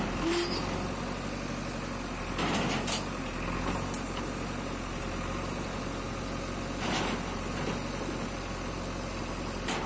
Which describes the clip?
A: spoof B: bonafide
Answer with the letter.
B